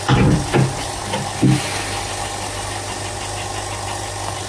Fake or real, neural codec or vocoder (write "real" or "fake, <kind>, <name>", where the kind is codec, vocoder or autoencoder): real